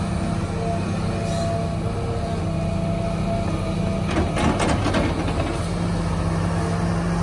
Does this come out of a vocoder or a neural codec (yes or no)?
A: no